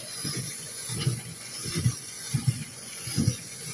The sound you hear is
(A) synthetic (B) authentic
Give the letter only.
A